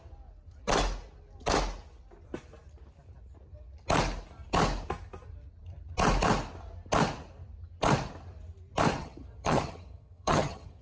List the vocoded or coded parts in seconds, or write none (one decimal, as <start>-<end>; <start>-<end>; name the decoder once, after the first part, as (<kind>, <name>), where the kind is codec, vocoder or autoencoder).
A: 9.0-10.8 (vocoder, HiFi-GAN)